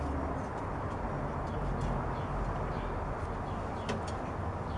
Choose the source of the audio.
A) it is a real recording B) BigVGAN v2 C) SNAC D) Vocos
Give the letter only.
A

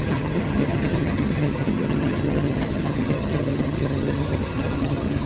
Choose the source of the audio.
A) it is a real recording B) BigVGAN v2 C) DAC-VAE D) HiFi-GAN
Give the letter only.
D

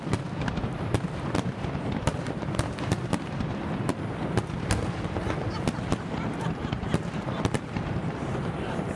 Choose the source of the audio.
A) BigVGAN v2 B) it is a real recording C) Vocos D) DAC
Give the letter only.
A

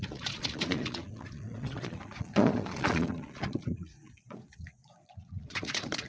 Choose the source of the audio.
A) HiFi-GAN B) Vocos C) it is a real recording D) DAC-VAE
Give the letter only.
B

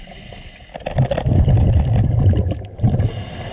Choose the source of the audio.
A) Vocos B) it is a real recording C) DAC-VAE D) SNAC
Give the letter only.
B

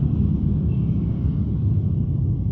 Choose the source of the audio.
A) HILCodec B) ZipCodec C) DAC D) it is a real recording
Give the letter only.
D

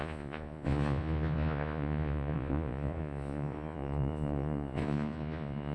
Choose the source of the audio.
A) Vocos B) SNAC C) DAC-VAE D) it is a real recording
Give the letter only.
A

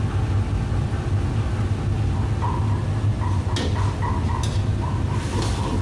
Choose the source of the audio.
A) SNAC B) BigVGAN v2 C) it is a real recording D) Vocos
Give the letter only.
C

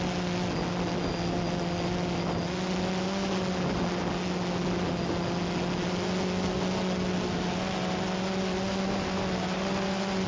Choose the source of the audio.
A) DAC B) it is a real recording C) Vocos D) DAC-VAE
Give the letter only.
B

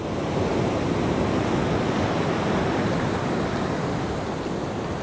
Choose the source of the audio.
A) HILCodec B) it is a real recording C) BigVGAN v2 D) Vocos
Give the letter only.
B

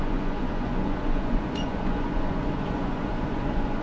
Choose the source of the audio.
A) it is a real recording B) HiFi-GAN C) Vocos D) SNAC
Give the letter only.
C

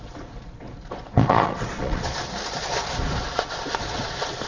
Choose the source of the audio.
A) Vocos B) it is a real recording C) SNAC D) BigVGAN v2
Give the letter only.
A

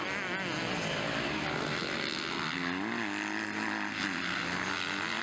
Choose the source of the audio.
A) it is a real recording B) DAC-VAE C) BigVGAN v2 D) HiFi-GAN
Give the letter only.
A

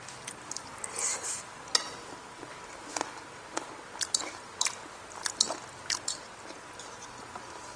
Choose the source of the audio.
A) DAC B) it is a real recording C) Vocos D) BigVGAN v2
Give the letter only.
B